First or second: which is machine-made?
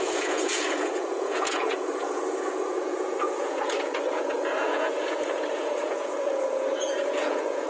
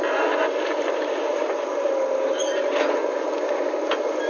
first